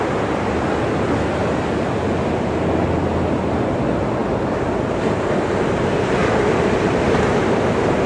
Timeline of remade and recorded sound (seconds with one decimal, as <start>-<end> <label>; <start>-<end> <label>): 0.0-1.4 recorded; 1.4-2.3 remade; 2.3-4.2 recorded; 4.2-5.8 remade; 5.8-6.2 recorded; 6.2-7.2 remade; 7.2-8.1 recorded